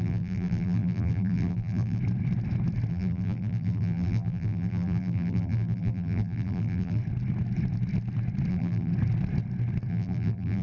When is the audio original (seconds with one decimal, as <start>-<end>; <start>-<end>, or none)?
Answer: 2.0-2.9; 7.0-8.5; 8.9-9.9

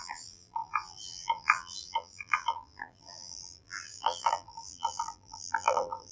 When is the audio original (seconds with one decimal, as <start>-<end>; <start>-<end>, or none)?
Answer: none